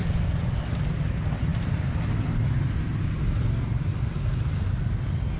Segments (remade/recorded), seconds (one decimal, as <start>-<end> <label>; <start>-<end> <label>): 0.0-0.7 remade; 0.7-5.4 recorded

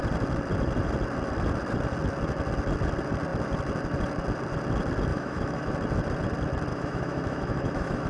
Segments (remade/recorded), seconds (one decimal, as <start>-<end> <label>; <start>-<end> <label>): 0.0-5.1 recorded; 5.1-5.7 remade; 5.7-6.7 recorded; 6.7-8.1 remade

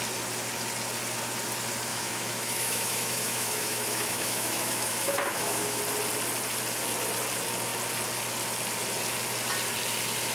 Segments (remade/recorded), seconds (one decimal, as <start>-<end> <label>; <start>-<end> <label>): 0.0-1.9 recorded; 1.9-5.8 remade; 5.8-10.3 recorded

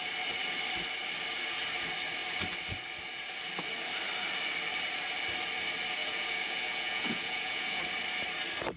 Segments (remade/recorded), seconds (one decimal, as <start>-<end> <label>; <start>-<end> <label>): 0.0-6.0 recorded; 6.0-7.8 remade; 7.8-8.8 recorded

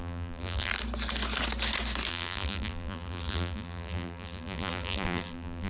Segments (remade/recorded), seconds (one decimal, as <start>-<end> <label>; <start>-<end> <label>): 0.0-0.7 remade; 0.7-2.1 recorded; 2.1-5.7 remade